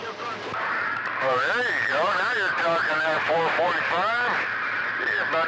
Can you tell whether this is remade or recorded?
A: remade